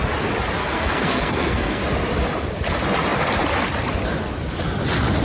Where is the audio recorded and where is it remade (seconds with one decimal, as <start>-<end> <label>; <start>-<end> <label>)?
0.0-0.6 recorded; 0.6-1.8 remade; 1.8-5.2 recorded